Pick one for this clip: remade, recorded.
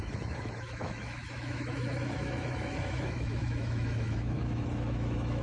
remade